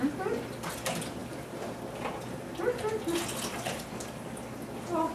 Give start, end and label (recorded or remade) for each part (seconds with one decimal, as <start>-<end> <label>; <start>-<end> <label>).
0.0-5.1 recorded